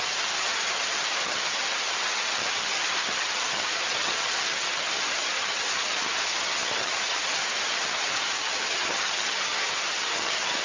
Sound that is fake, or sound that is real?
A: fake